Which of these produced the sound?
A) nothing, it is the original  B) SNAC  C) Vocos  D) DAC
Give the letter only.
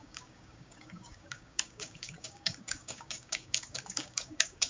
D